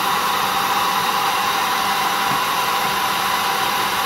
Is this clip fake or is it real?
fake